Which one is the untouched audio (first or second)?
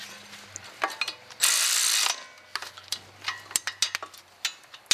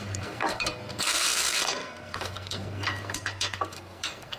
first